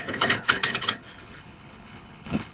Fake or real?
fake